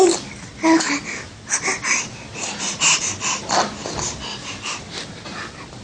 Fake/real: real